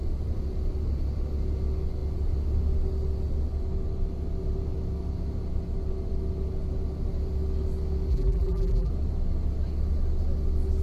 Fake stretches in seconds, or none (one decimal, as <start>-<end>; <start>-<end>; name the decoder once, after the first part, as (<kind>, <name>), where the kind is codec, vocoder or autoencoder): 8.1-8.9 (vocoder, BigVGAN v2)